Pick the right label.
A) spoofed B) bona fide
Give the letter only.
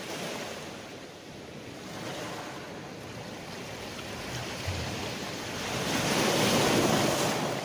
B